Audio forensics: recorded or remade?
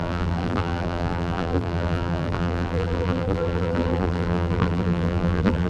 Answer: remade